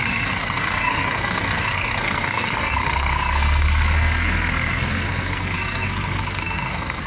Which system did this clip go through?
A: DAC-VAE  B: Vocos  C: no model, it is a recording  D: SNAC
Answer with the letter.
D